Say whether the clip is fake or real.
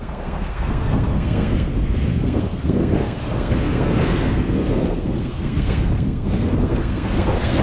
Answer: fake